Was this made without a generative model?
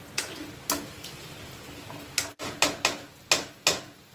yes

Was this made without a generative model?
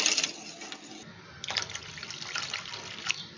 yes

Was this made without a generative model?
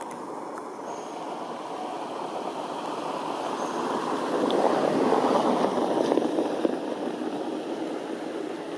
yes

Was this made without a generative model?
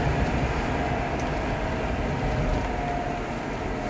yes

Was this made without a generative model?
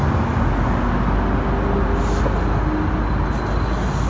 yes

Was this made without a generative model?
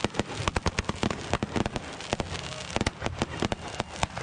yes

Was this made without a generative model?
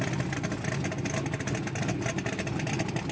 yes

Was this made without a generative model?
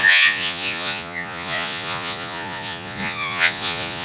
no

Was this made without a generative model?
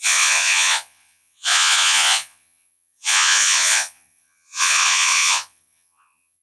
no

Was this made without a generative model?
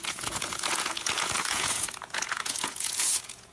no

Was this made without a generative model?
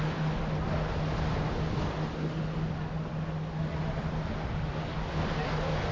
yes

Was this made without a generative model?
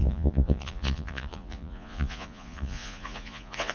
no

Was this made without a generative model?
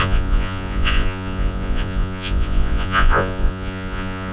no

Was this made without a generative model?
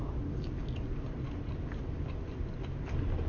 yes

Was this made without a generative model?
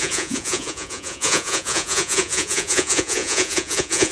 no